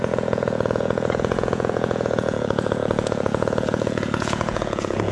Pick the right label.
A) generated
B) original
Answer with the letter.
A